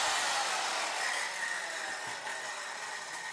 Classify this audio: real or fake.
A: real